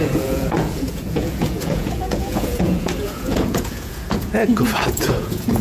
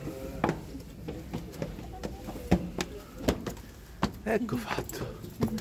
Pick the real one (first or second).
second